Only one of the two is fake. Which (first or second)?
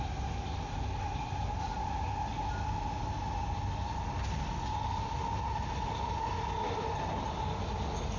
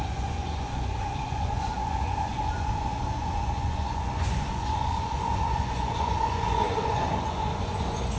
second